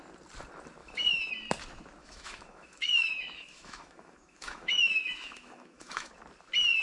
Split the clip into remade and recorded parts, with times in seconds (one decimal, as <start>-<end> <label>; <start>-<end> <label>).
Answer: 0.0-0.8 recorded; 0.8-1.3 remade; 1.3-2.0 recorded; 2.0-6.1 remade; 6.1-6.8 recorded

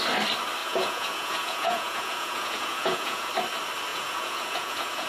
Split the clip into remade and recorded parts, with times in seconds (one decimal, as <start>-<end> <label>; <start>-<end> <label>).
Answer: 0.0-0.6 recorded; 0.6-3.3 remade; 3.3-3.9 recorded; 3.9-5.1 remade

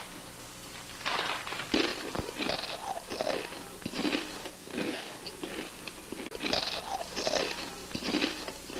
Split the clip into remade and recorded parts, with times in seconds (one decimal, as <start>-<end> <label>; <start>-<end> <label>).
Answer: 0.0-4.4 recorded; 4.4-5.2 remade; 5.2-8.8 recorded